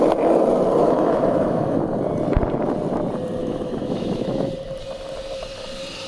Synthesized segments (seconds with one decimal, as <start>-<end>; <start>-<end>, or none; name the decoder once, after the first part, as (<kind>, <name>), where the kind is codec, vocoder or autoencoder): 0.8-1.8 (autoencoder, DAC-VAE); 3.4-4.5